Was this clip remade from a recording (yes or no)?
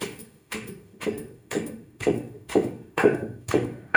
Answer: yes